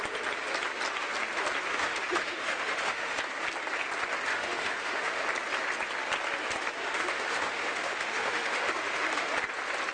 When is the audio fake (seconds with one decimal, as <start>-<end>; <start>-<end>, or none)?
1.7-3.2; 4.3-5.2; 6.8-9.3